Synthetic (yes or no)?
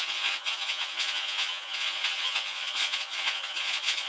yes